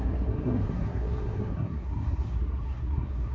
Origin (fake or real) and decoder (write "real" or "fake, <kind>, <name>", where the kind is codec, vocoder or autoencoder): fake, codec, SNAC